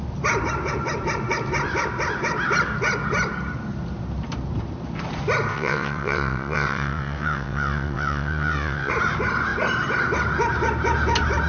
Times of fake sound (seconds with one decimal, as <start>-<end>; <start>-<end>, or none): 5.5-8.9